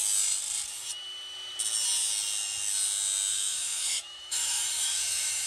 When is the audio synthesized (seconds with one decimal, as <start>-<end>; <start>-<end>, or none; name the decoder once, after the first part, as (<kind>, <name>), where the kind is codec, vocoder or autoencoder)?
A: 3.3-5.5 (autoencoder, DAC-VAE)